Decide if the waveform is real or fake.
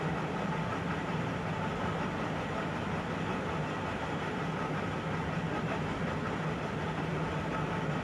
real